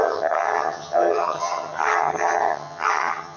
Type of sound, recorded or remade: remade